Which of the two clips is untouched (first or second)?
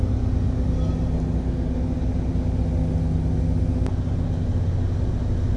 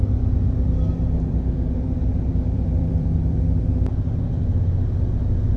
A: first